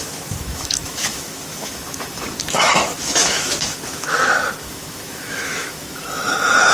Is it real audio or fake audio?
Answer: fake